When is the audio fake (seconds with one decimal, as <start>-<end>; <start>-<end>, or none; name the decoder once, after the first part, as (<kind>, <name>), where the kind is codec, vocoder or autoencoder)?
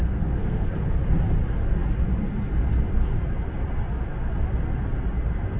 0.0-0.7 (codec, SNAC)